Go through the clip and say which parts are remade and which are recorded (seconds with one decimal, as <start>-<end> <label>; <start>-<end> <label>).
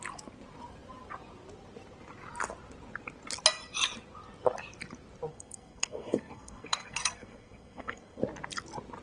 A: 0.0-5.3 recorded; 5.3-8.2 remade; 8.2-9.0 recorded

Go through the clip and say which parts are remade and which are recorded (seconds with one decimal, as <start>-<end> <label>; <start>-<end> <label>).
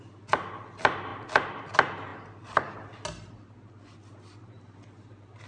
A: 0.0-5.5 recorded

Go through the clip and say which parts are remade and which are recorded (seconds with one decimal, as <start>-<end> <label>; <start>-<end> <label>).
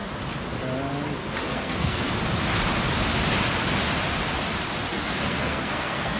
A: 0.0-1.5 recorded; 1.5-2.1 remade; 2.1-4.9 recorded; 4.9-6.2 remade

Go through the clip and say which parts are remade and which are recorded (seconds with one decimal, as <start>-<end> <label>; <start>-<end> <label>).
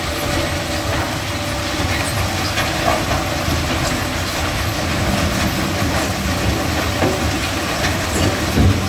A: 0.0-8.9 recorded